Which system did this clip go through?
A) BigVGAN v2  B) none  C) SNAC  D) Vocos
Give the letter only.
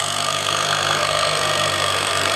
C